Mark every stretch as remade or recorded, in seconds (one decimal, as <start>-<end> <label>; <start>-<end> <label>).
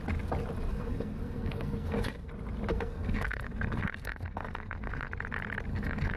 0.0-0.7 recorded; 0.7-2.3 remade; 2.3-2.7 recorded; 2.7-5.1 remade; 5.1-5.7 recorded; 5.7-6.2 remade